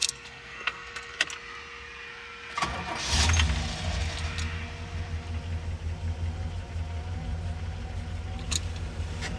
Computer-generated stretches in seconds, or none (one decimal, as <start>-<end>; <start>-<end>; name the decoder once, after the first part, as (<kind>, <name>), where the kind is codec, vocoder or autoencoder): 0.0-1.2 (codec, SNAC)